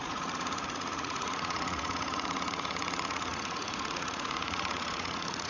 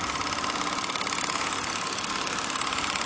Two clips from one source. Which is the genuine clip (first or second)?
second